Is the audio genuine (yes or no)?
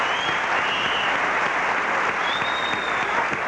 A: yes